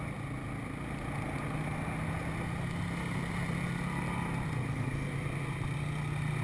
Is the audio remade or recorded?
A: recorded